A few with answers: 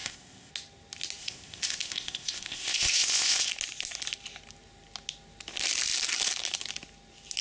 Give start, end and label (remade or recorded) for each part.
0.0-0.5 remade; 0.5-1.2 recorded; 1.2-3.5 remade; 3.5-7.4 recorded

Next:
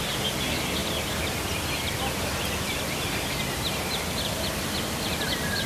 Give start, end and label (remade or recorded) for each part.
0.0-5.7 recorded

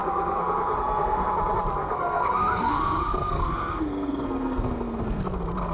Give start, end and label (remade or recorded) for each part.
0.0-1.3 remade; 1.3-1.8 recorded; 1.8-5.2 remade; 5.2-5.7 recorded

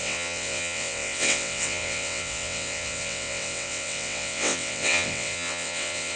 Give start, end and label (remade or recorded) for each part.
0.0-6.2 remade

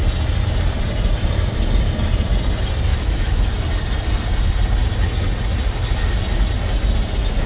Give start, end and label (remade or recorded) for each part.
0.0-2.9 recorded; 2.9-3.5 remade; 3.5-7.5 recorded